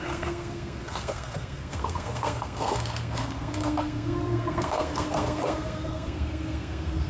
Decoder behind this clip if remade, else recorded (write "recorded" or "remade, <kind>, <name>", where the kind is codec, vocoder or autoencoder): remade, codec, SNAC